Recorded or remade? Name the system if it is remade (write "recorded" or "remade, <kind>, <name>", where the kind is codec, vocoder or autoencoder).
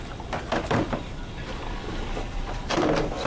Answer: recorded